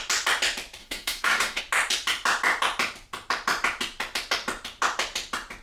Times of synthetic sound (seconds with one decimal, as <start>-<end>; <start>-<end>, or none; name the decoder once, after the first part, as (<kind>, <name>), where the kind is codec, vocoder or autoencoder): 0.8-1.6 (autoencoder, DAC-VAE)